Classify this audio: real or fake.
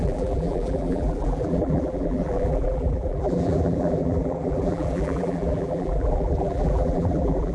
fake